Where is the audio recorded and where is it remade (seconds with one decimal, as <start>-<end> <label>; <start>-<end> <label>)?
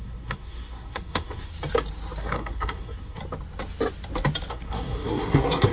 0.0-1.5 remade; 1.5-2.2 recorded; 2.2-3.2 remade; 3.2-4.5 recorded; 4.5-5.7 remade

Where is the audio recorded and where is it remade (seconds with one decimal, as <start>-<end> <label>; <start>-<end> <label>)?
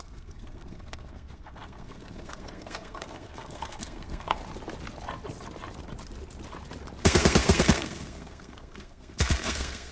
0.0-4.4 remade; 4.4-7.0 recorded; 7.0-9.9 remade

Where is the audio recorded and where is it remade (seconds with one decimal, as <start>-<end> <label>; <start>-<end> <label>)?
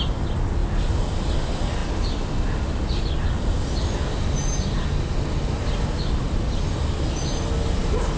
0.0-8.2 recorded